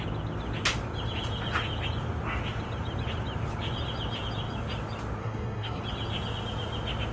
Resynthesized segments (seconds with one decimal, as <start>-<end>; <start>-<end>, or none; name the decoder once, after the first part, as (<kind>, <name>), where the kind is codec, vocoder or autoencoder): 5.2-5.8 (codec, SNAC)